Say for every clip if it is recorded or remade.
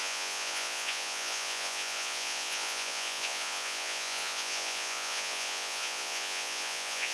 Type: remade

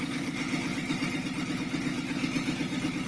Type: recorded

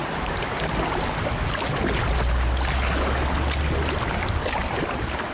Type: recorded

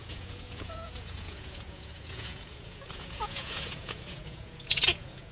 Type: remade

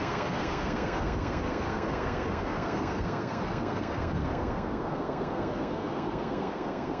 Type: remade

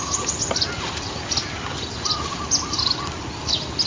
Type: recorded